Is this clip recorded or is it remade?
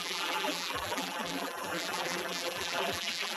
remade